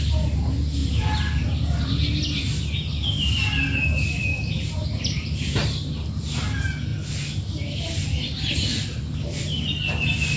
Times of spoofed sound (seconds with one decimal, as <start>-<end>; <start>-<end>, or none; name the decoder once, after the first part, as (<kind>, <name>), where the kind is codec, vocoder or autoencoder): 0.8-1.8 (vocoder, BigVGAN v2); 4.3-5.9